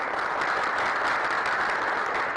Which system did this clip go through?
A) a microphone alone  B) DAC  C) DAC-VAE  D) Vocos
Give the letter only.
A